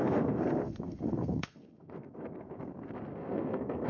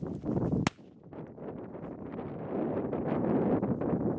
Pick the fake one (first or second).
first